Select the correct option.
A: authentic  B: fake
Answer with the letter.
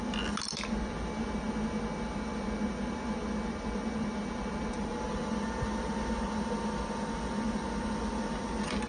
A